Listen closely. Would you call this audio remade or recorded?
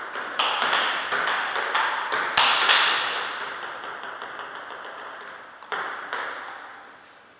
recorded